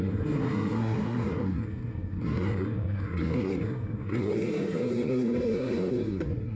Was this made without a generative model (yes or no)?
no